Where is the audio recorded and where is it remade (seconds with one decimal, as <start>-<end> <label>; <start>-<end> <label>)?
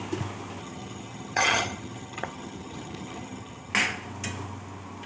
0.0-0.6 recorded; 0.6-3.7 remade; 3.7-5.1 recorded